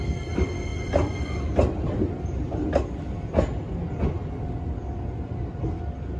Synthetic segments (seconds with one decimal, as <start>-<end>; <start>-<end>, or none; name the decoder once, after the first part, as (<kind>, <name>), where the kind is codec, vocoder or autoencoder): none

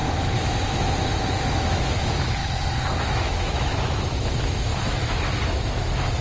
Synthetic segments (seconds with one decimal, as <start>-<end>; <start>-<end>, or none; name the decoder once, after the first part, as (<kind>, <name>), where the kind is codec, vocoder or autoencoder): 0.0-2.4 (autoencoder, DAC-VAE); 3.0-6.2

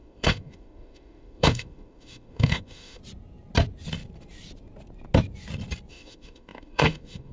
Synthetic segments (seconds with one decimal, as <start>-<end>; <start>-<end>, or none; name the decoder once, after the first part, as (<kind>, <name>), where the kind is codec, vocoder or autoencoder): 0.0-3.0 (autoencoder, DAC-VAE); 5.9-7.3

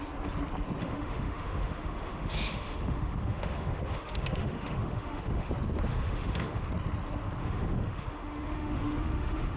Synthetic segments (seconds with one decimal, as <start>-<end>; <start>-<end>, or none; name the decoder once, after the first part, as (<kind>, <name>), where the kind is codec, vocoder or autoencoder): 0.8-5.5 (autoencoder, DAC-VAE); 5.9-6.7; 7.4-9.6

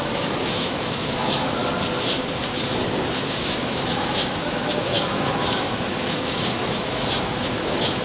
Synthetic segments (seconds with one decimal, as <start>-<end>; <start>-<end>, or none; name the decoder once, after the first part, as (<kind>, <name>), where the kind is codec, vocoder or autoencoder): 0.0-1.6 (autoencoder, DAC-VAE); 3.3-8.0